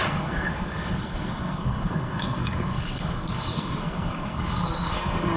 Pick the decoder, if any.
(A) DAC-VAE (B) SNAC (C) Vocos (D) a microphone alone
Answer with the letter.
B